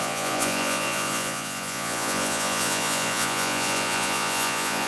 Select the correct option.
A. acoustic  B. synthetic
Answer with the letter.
B